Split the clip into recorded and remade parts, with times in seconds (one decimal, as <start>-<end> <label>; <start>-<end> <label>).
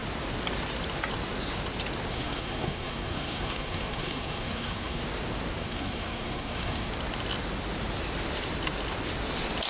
0.0-2.1 recorded; 2.1-5.0 remade; 5.0-5.6 recorded; 5.6-6.9 remade; 6.9-9.7 recorded